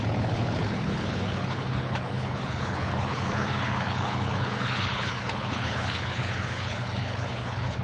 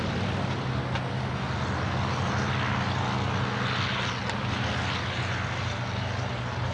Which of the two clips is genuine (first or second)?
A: second